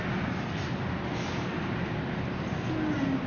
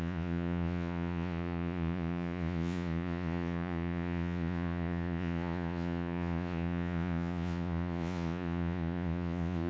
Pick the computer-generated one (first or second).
second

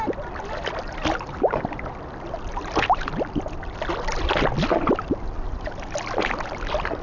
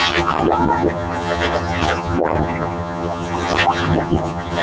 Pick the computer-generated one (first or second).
second